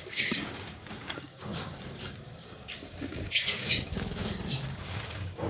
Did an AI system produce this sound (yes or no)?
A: yes